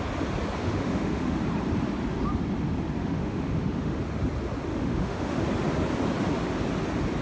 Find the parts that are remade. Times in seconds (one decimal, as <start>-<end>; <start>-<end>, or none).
0.6-1.4; 3.0-4.0; 4.7-5.4